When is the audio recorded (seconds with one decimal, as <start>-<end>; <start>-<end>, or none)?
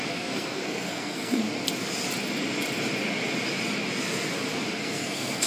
1.4-4.7